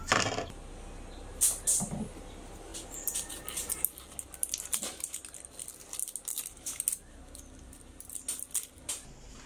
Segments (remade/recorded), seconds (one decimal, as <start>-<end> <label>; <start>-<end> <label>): 0.0-9.5 recorded

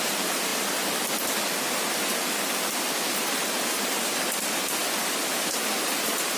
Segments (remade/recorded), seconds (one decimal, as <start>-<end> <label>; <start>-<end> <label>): 0.0-4.8 remade; 4.8-6.4 recorded

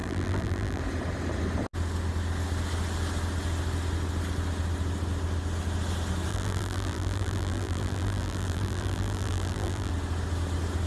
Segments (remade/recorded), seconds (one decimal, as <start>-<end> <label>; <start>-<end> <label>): 0.0-0.8 remade; 0.8-6.3 recorded; 6.3-9.9 remade; 9.9-10.9 recorded

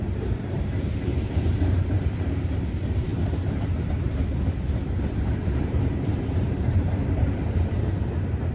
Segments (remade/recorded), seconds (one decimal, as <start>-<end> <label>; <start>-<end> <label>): 0.0-8.5 remade

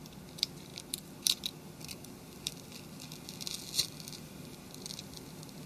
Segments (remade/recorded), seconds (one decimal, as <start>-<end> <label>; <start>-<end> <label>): 0.0-5.7 recorded

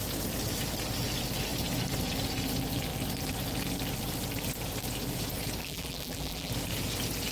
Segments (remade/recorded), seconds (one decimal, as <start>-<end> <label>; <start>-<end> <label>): 0.0-5.6 recorded; 5.6-6.5 remade; 6.5-7.3 recorded

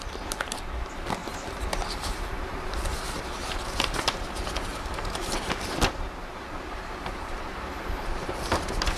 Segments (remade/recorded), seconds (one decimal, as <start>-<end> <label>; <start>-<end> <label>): 0.0-1.2 recorded; 1.2-4.2 remade; 4.2-4.7 recorded; 4.7-5.6 remade; 5.6-6.3 recorded; 6.3-9.0 remade